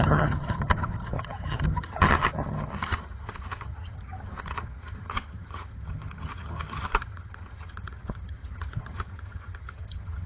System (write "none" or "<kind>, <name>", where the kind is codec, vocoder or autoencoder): vocoder, HiFi-GAN